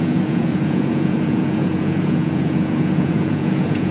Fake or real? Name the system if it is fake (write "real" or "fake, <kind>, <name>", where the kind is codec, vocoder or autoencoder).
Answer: fake, vocoder, Vocos